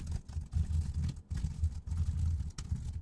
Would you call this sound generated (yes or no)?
no